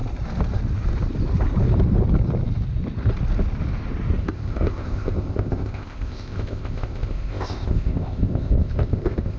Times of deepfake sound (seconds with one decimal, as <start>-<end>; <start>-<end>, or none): 4.2-9.4